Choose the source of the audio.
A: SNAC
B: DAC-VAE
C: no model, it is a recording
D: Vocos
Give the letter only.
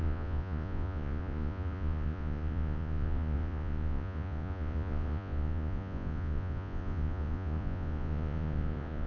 D